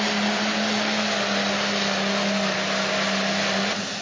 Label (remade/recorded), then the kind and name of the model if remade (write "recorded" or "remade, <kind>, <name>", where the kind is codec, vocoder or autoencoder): recorded